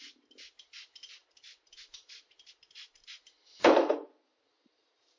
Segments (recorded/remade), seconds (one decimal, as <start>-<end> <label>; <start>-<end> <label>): 0.0-1.2 recorded; 1.2-3.9 remade; 3.9-5.2 recorded